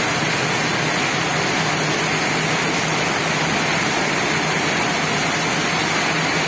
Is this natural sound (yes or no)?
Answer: yes